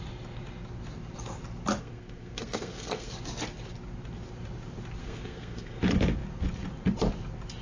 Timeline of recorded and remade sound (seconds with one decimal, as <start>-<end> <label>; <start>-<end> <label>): 0.0-1.8 recorded; 1.8-3.1 remade; 3.1-5.0 recorded; 5.0-5.8 remade; 5.8-7.6 recorded